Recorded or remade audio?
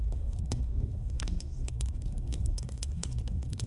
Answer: remade